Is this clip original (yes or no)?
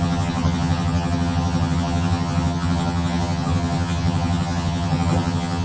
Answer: no